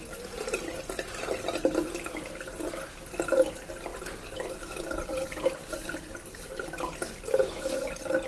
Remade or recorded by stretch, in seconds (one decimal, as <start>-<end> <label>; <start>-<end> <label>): 0.0-8.3 recorded